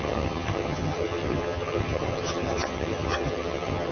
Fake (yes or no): yes